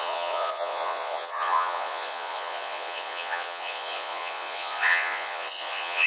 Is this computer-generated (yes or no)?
yes